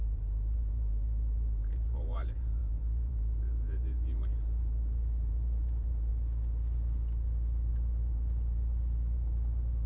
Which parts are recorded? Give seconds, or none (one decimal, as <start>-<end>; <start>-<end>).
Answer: 6.1-7.7